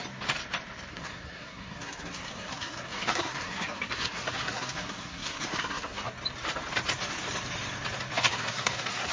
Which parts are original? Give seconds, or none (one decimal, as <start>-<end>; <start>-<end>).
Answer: 0.0-0.9; 6.1-8.2